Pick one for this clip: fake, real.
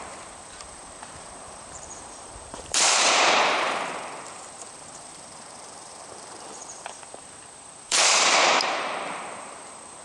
fake